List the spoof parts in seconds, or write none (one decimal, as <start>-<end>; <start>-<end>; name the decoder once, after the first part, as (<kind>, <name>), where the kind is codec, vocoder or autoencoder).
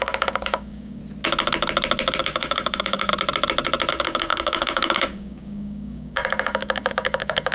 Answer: 0.0-1.0 (codec, DAC); 2.2-3.1; 3.9-7.5